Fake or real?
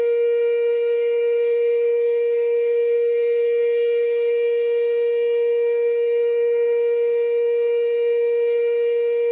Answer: fake